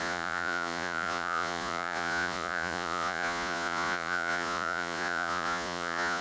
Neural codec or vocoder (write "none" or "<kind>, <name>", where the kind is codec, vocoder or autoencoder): vocoder, Vocos